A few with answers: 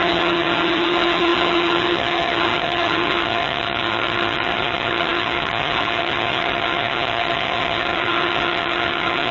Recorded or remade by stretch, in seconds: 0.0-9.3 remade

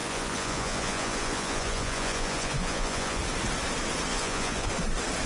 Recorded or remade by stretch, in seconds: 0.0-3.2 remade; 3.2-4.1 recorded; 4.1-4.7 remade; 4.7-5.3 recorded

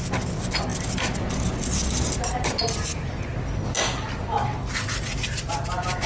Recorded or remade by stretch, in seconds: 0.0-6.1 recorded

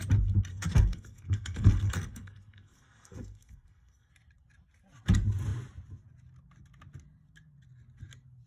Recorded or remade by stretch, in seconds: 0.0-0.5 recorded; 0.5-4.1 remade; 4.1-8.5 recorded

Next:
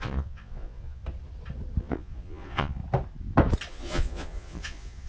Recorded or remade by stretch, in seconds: 0.0-1.0 remade; 1.0-1.8 recorded; 1.8-2.8 remade; 2.8-3.7 recorded; 3.7-5.1 remade

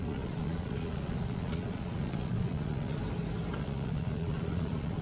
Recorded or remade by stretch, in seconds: 0.0-3.0 remade; 3.0-3.6 recorded; 3.6-5.0 remade

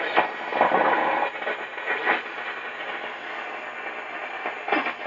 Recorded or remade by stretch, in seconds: 0.0-5.1 recorded

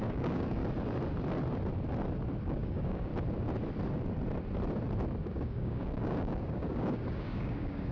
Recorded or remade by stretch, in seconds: 0.0-0.6 remade; 0.6-2.4 recorded; 2.4-3.1 remade; 3.1-5.2 recorded; 5.2-7.9 remade